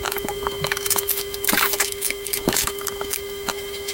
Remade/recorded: remade